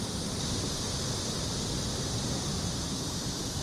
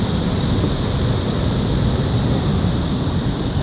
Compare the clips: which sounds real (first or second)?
second